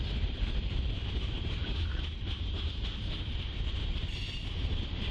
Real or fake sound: fake